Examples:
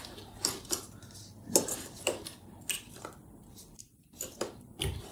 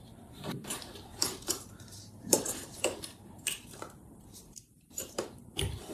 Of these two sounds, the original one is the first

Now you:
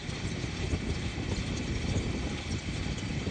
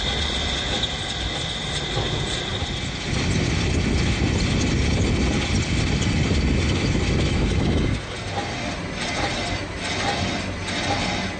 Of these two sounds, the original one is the second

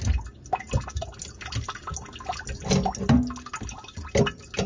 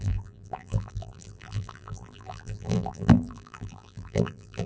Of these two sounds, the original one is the first